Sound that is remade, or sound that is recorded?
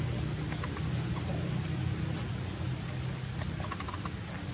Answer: recorded